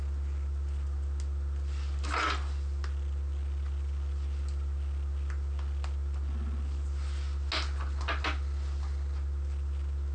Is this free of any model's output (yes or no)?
yes